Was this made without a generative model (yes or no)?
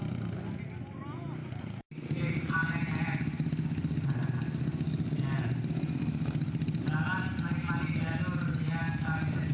yes